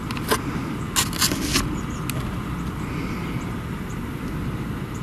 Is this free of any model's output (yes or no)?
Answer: yes